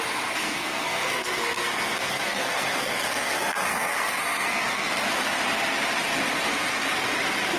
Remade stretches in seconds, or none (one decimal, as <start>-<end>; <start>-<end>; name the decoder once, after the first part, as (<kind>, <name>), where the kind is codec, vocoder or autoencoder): 0.4-4.9 (codec, SNAC)